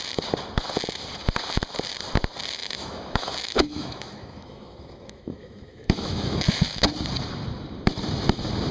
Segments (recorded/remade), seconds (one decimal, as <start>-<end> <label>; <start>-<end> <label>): 0.0-2.6 recorded; 2.6-6.8 remade; 6.8-8.7 recorded